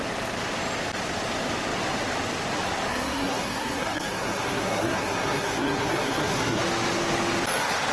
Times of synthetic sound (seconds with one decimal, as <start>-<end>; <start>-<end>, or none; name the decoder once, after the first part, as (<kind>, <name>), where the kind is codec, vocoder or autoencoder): 2.9-6.6 (codec, SNAC)